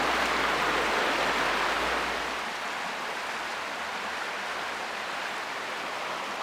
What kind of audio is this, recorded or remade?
recorded